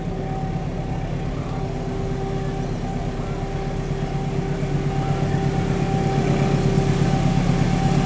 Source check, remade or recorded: recorded